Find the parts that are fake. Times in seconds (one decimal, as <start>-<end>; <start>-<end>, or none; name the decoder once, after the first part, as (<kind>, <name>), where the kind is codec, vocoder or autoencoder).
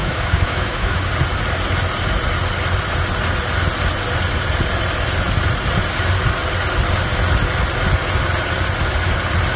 0.0-1.1 (autoencoder, DAC-VAE)